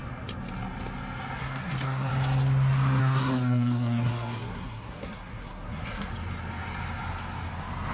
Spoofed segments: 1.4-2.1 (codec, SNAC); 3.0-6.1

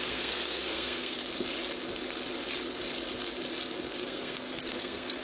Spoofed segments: 0.0-1.2 (codec, SNAC); 4.0-5.2

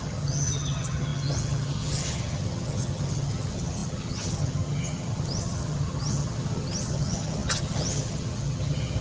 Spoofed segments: 0.0-9.0 (vocoder, HiFi-GAN)

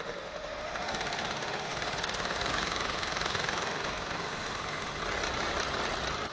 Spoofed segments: 0.0-5.0 (autoencoder, DAC-VAE)